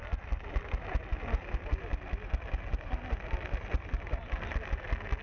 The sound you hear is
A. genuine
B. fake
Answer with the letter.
A